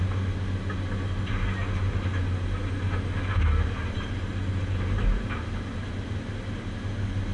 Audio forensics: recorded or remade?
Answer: recorded